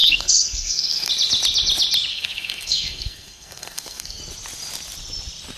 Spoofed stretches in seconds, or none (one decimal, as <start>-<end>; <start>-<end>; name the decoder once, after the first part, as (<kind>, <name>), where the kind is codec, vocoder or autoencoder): 0.0-1.1 (codec, SNAC); 2.1-4.2